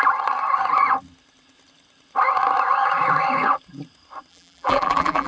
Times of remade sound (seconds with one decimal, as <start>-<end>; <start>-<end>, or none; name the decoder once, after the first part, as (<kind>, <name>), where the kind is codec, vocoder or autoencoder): 4.3-5.3 (vocoder, BigVGAN v2)